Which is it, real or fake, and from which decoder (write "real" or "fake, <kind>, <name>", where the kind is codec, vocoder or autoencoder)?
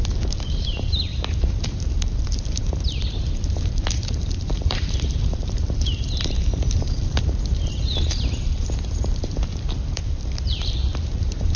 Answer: fake, vocoder, BigVGAN v2